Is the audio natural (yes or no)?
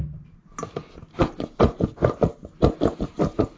yes